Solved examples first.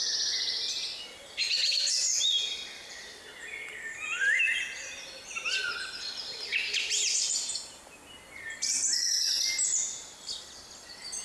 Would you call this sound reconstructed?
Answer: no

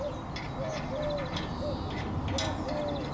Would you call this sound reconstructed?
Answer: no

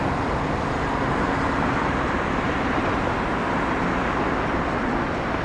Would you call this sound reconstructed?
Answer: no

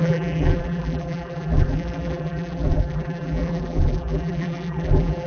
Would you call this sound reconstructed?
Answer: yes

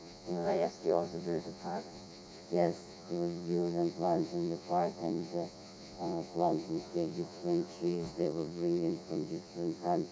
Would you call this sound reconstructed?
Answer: yes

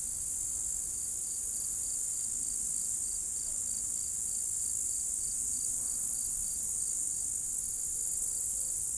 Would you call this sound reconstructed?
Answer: no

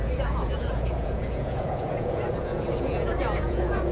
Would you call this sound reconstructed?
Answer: yes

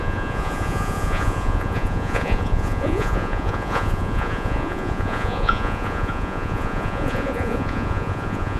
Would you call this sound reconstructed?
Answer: yes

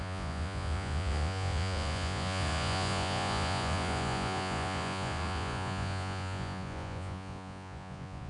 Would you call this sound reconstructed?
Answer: yes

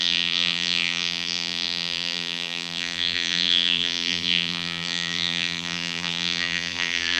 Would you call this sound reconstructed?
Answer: yes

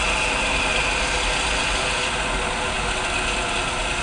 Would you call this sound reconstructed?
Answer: no